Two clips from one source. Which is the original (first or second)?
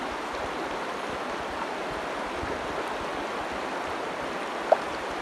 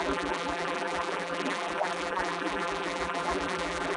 first